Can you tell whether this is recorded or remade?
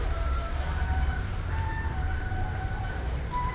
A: remade